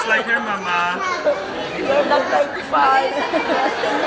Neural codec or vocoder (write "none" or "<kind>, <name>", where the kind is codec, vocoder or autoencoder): none